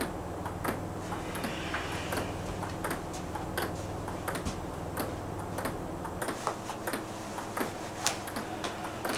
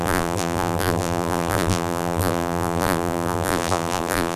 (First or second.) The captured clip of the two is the first